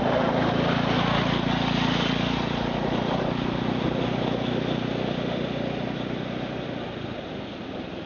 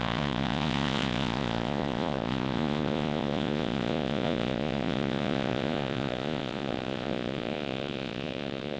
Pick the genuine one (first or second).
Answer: first